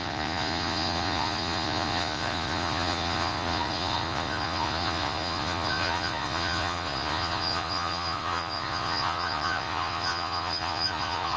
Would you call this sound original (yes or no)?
no